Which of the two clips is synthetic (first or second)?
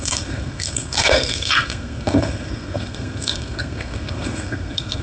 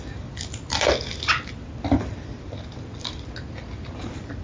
first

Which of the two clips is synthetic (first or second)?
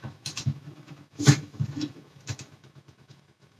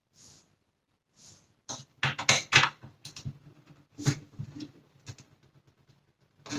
first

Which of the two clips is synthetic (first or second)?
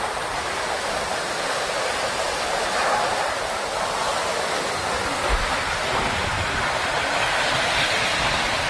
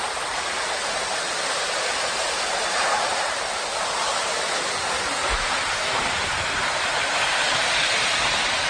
second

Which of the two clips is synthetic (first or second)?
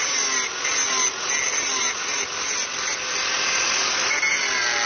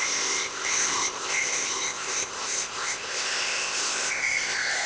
second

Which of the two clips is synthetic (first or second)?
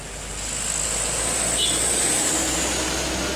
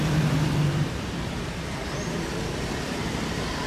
second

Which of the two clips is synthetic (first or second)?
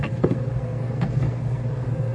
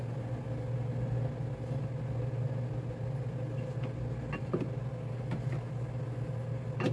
first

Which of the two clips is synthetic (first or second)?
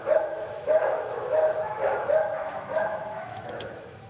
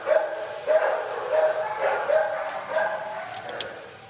first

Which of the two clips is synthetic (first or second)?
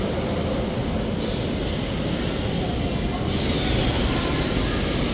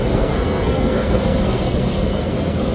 second